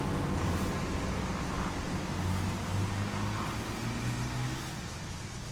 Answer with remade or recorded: recorded